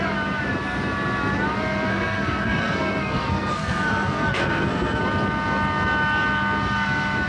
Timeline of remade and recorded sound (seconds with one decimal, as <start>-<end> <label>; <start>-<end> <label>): 0.0-1.9 recorded; 1.9-5.0 remade; 5.0-7.3 recorded